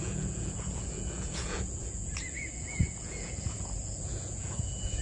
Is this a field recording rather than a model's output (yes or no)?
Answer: no